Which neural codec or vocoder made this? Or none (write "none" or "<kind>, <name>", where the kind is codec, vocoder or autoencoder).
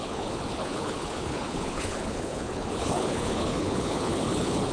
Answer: codec, HILCodec